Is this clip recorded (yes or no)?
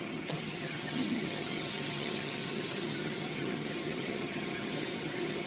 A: no